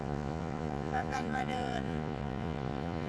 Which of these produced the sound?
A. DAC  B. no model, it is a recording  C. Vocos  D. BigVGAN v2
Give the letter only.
C